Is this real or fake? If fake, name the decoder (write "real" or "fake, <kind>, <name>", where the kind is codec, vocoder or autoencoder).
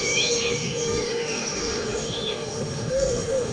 fake, autoencoder, DAC-VAE